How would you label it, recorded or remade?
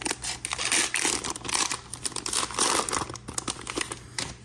recorded